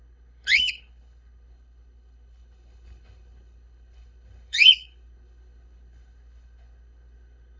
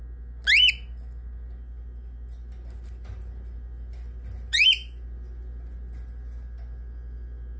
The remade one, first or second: first